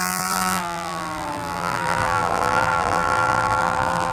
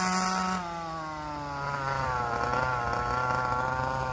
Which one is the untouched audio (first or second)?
second